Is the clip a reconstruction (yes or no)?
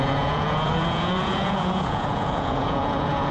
yes